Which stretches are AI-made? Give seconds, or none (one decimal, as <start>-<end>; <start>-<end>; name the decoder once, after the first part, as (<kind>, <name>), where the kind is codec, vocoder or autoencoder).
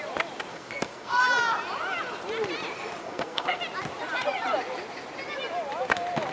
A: 0.5-1.2 (codec, SNAC); 3.0-3.6